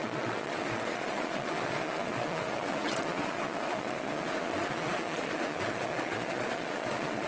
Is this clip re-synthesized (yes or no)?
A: yes